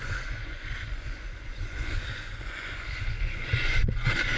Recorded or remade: remade